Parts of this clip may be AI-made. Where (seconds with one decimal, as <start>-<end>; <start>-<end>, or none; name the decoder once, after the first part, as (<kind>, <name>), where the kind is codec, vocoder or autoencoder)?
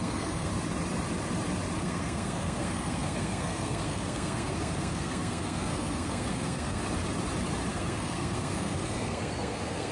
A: 0.0-0.5 (codec, SNAC); 1.8-6.8; 7.7-9.9